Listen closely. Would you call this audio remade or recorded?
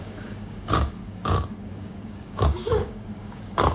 remade